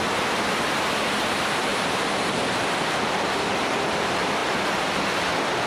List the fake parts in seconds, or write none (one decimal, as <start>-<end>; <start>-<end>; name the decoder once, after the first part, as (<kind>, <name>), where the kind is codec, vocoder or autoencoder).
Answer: 1.7-2.3 (vocoder, BigVGAN v2); 4.4-4.9